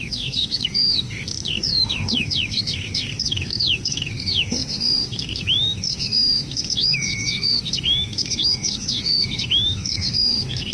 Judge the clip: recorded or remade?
remade